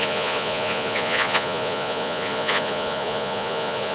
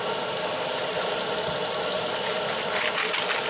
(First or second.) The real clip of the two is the second